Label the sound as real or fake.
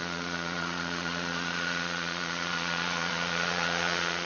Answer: fake